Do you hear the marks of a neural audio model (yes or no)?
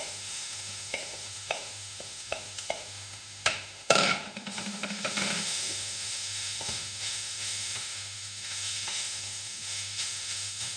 yes